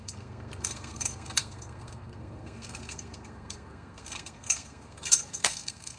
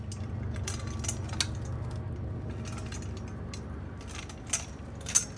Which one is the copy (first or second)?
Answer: first